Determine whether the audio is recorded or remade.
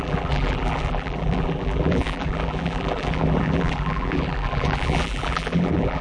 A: remade